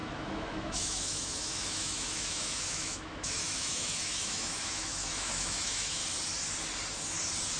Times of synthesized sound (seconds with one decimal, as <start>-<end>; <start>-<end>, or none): 0.0-6.0